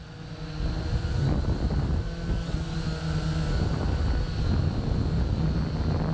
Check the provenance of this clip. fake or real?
real